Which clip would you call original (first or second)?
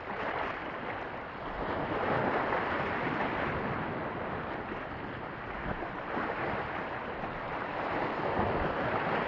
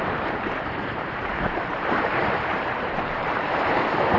first